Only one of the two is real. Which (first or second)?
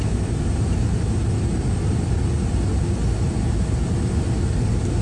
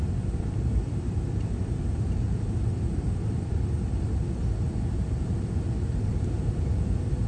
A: first